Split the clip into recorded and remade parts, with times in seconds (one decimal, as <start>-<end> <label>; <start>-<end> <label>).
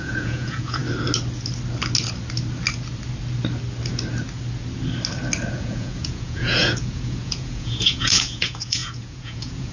0.0-0.8 remade; 0.8-5.5 recorded; 5.5-9.7 remade